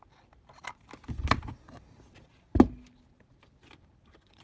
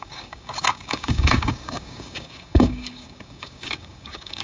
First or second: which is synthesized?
second